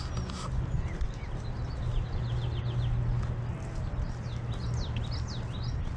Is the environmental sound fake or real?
real